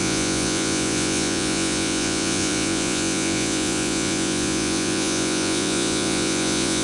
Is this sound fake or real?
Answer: fake